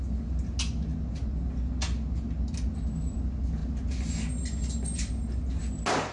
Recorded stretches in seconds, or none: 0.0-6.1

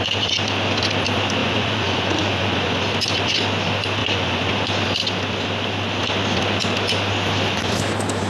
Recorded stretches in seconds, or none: 0.0-1.4; 2.8-4.0; 4.5-8.3

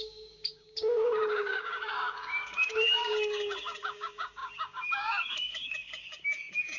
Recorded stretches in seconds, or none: none

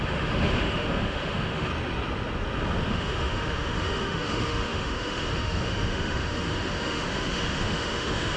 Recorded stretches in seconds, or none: 1.7-2.9

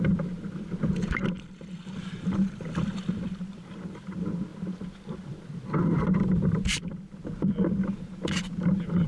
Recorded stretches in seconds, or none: 4.5-6.1

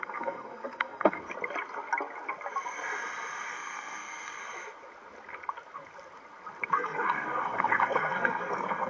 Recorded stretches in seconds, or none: 1.2-3.5; 4.4-6.7

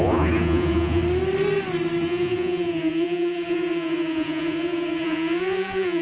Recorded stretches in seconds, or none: 1.0-2.0